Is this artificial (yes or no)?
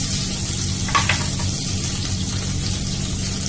no